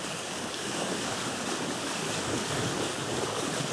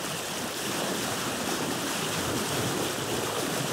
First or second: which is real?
second